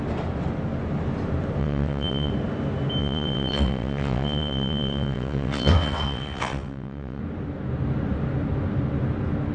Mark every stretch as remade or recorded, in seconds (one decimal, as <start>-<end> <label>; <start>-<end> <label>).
0.0-1.6 recorded; 1.6-2.3 remade; 2.3-3.0 recorded; 3.0-7.2 remade; 7.2-9.5 recorded